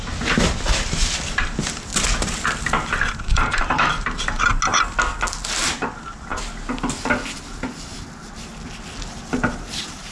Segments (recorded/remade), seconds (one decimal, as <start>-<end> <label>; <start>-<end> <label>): 0.0-1.9 remade; 1.9-3.1 recorded; 3.1-4.5 remade; 4.5-5.6 recorded; 5.6-6.3 remade; 6.3-9.1 recorded; 9.1-10.1 remade